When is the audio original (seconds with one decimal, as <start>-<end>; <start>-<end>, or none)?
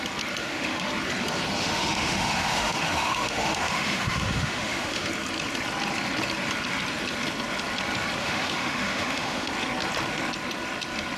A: 0.0-0.4; 0.9-1.6; 5.1-8.2; 9.5-11.2